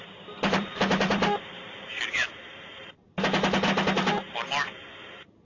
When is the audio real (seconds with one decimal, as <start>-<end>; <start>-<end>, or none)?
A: 2.9-5.4